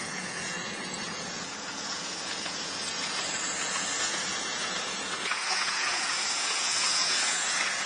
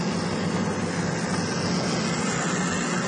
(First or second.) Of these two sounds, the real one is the second